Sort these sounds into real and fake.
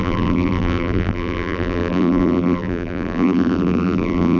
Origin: fake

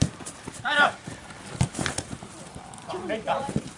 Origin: fake